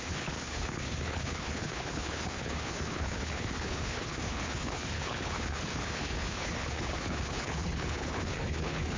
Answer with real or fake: fake